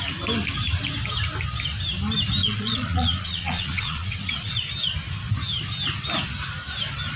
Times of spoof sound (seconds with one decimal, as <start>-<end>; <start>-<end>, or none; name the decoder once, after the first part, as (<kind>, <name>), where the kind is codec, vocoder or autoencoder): 2.4-4.5 (vocoder, Vocos)